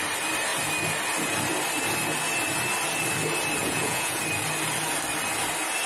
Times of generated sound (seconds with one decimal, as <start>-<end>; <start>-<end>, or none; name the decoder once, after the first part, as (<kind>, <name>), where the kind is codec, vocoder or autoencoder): 3.6-4.2 (vocoder, Vocos)